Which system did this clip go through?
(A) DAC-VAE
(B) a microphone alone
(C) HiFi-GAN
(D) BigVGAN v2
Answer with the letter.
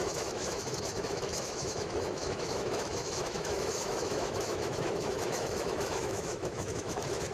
A